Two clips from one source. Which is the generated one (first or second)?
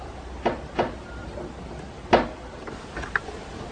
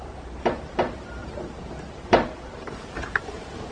second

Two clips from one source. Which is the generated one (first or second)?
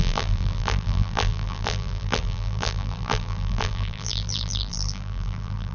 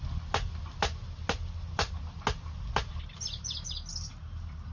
first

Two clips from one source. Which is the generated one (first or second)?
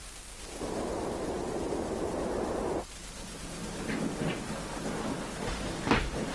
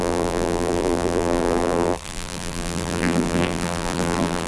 second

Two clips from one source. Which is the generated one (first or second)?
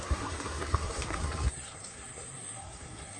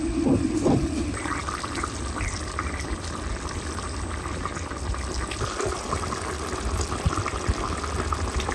first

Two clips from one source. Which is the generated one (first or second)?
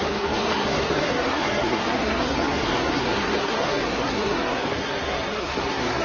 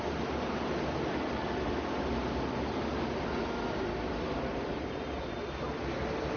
first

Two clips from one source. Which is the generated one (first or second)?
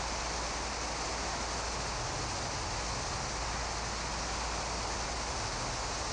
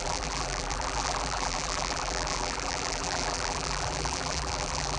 second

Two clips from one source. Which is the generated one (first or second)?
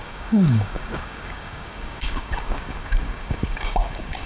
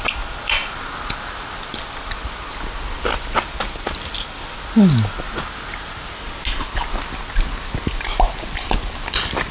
first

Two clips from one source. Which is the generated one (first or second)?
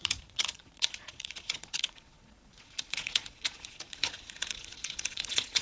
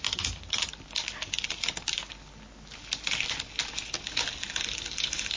first